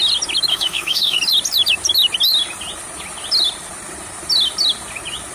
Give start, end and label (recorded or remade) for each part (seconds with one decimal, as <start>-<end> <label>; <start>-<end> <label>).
0.0-0.5 recorded; 0.5-1.2 remade; 1.2-5.3 recorded